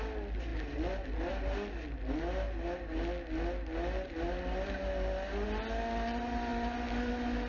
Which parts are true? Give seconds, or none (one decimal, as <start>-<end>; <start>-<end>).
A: 0.0-7.5